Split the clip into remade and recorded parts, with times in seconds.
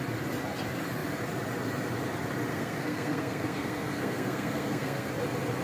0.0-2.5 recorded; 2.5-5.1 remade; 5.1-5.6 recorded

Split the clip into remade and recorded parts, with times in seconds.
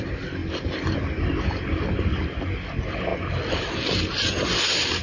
0.0-5.0 recorded